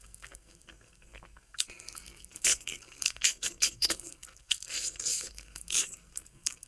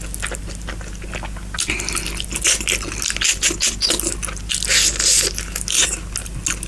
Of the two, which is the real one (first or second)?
second